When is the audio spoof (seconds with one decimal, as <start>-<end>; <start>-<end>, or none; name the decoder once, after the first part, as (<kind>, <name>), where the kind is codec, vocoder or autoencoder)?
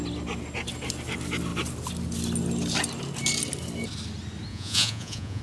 4.5-5.4 (vocoder, Vocos)